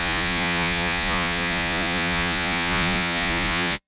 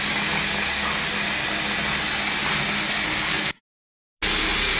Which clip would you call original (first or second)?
second